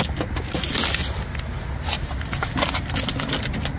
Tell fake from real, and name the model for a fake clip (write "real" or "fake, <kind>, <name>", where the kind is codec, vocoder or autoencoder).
real